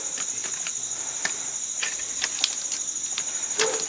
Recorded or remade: recorded